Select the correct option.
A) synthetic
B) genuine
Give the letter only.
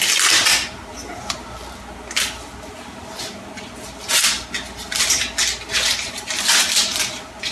B